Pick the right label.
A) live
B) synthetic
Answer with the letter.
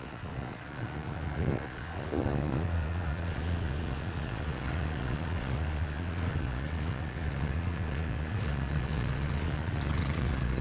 B